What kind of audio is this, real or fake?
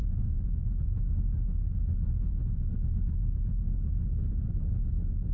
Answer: real